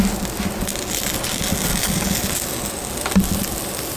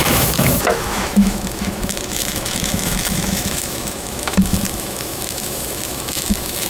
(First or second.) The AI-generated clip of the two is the second